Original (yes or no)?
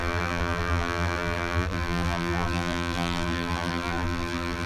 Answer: no